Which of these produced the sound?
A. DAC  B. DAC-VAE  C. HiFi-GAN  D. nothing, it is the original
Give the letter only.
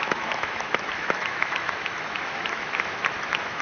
B